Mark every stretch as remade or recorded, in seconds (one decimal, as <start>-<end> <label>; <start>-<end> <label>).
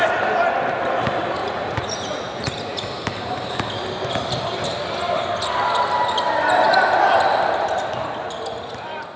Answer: 0.0-1.4 recorded; 1.4-2.9 remade; 2.9-9.2 recorded